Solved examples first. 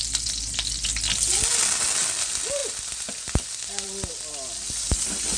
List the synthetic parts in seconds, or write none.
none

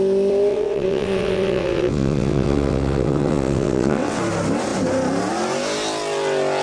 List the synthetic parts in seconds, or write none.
0.5-4.2 (vocoder, WaveNeXt)

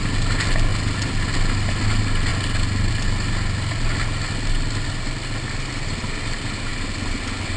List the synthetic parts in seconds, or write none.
none

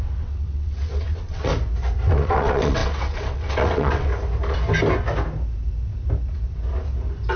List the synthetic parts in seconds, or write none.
0.0-1.5 (vocoder, WaveNeXt); 2.1-4.1